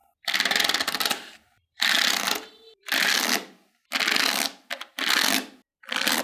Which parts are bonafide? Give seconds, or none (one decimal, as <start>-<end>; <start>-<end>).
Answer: 3.7-5.7